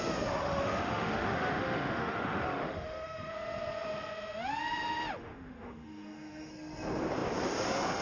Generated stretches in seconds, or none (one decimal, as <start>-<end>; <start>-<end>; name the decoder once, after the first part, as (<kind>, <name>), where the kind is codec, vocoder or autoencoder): 0.4-3.3 (autoencoder, DAC-VAE); 5.2-6.5